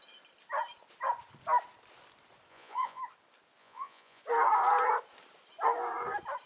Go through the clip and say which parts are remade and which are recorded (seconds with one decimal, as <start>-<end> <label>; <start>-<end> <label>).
0.0-2.5 recorded; 2.5-3.0 remade; 3.0-3.6 recorded; 3.6-4.2 remade; 4.2-6.5 recorded

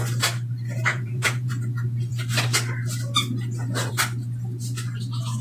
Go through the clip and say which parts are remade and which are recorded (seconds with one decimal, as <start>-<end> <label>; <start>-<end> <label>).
0.0-0.9 recorded; 0.9-1.5 remade; 1.5-5.4 recorded

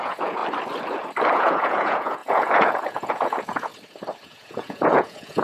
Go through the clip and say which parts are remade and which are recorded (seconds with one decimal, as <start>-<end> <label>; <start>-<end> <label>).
0.0-0.4 remade; 0.4-1.3 recorded; 1.3-3.7 remade; 3.7-4.3 recorded; 4.3-5.4 remade

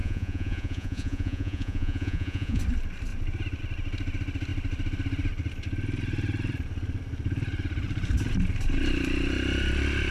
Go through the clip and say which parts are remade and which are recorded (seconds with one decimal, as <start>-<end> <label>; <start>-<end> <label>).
0.0-2.6 remade; 2.6-10.1 recorded

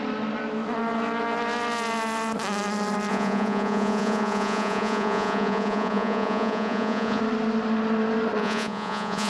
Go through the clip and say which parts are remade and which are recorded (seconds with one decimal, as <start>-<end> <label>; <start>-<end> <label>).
0.0-3.1 recorded; 3.1-7.2 remade; 7.2-8.4 recorded; 8.4-9.3 remade

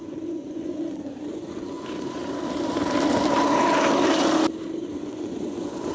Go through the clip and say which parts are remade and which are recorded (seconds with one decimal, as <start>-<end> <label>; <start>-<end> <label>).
0.0-2.2 remade; 2.2-4.9 recorded; 4.9-5.9 remade